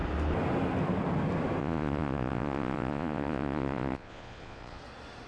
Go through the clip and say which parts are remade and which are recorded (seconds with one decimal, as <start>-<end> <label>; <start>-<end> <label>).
0.0-1.6 recorded; 1.6-4.8 remade; 4.8-5.3 recorded